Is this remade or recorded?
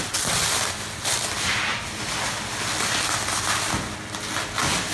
recorded